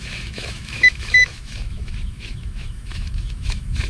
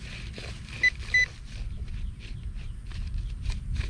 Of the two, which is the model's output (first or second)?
first